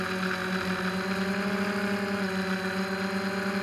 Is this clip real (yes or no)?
yes